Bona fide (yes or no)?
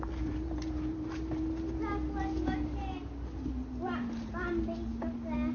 yes